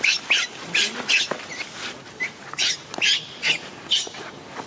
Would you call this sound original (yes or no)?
yes